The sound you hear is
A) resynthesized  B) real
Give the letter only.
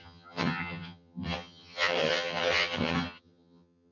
A